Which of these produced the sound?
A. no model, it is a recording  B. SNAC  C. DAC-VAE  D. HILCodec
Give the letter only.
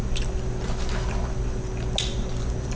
A